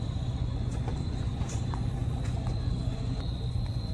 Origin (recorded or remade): remade